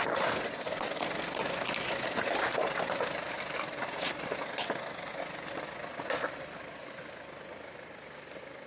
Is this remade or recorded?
recorded